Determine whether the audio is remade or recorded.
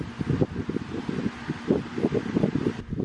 recorded